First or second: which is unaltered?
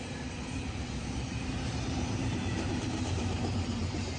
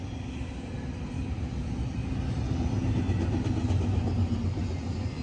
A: second